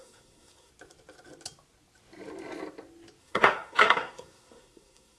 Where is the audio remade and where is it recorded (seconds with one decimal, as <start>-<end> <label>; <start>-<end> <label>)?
0.0-0.7 remade; 0.7-3.2 recorded; 3.2-5.2 remade